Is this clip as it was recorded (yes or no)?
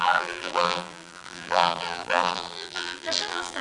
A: no